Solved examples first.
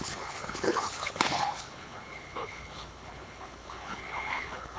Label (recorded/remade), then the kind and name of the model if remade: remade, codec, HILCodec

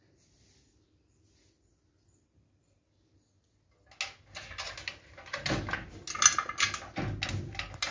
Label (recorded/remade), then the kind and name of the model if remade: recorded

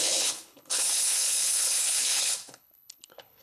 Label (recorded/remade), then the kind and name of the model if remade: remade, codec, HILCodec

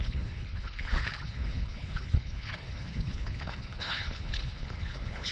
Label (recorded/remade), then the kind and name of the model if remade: remade, codec, HILCodec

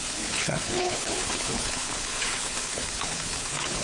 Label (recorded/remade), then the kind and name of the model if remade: remade, codec, HILCodec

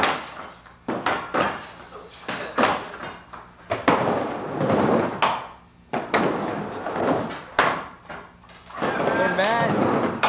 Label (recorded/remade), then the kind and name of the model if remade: recorded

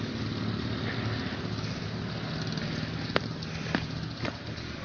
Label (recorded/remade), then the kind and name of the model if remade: recorded